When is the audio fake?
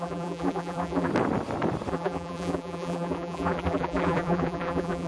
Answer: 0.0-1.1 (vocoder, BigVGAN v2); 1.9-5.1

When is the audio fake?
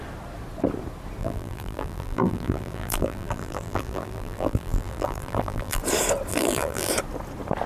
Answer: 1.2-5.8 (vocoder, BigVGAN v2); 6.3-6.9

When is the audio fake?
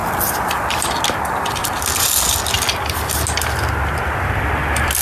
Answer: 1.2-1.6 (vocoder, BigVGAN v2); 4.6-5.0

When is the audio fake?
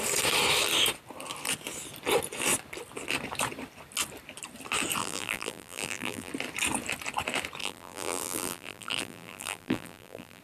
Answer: 5.0-6.3 (vocoder, BigVGAN v2); 7.6-10.4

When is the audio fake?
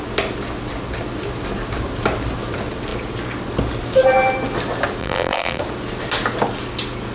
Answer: 5.0-5.6 (vocoder, BigVGAN v2)